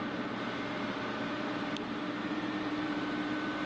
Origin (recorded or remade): remade